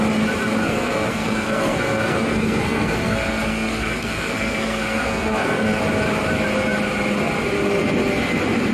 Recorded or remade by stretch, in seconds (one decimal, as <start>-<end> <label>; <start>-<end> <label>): 0.0-0.6 recorded; 0.6-5.8 remade; 5.8-8.7 recorded